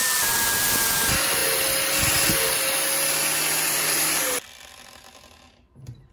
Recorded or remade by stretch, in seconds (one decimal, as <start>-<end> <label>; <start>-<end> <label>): 0.0-6.1 recorded